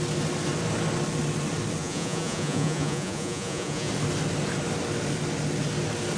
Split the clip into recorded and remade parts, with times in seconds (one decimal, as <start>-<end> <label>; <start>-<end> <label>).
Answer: 0.0-1.8 recorded; 1.8-3.9 remade; 3.9-6.2 recorded